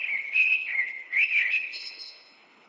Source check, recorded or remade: remade